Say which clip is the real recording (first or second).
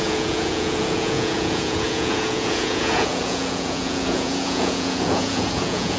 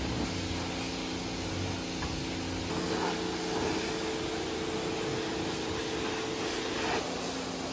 second